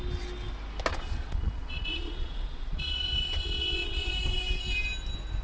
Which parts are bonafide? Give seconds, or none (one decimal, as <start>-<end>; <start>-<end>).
0.0-0.9; 4.1-5.4